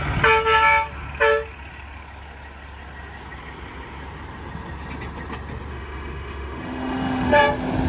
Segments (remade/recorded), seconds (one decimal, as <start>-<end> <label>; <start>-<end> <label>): 0.0-5.7 recorded; 5.7-7.4 remade; 7.4-7.9 recorded